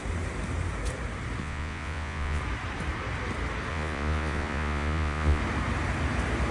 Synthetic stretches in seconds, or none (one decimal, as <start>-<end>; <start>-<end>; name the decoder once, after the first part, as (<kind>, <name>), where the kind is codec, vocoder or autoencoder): 1.4-2.4 (vocoder, Vocos); 3.7-5.4